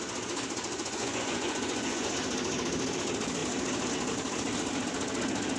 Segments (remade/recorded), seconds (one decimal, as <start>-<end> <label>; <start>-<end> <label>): 0.0-0.7 recorded; 0.7-2.1 remade; 2.1-5.6 recorded